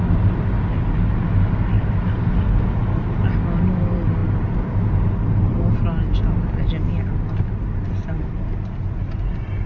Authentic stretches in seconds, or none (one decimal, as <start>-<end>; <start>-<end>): 0.0-9.7